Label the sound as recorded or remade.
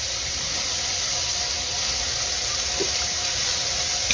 recorded